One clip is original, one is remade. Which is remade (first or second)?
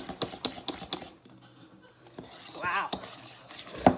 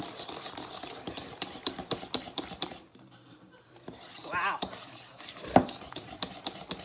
second